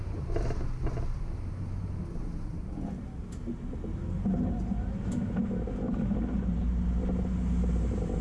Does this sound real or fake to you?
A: real